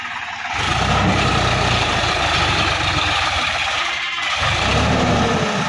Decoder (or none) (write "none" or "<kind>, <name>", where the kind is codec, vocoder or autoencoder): none